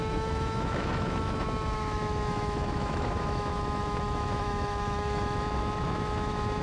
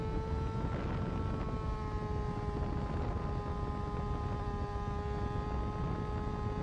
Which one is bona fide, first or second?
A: second